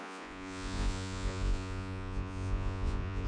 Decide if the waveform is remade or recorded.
remade